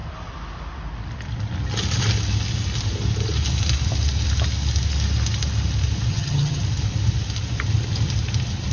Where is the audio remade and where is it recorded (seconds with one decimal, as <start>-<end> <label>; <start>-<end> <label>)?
0.0-6.1 recorded; 6.1-6.6 remade; 6.6-8.7 recorded